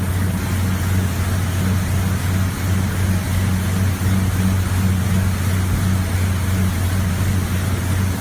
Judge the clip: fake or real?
real